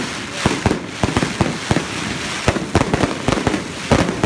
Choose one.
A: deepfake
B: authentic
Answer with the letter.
B